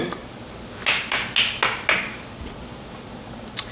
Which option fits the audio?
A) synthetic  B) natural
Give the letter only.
B